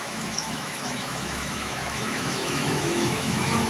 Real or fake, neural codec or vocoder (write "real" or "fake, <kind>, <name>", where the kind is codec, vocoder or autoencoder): fake, autoencoder, DAC-VAE